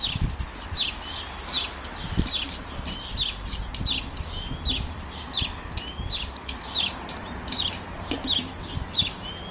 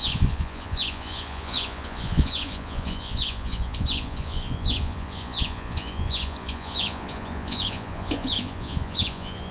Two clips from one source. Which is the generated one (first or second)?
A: second